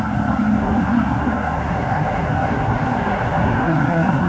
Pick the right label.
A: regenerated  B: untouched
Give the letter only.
A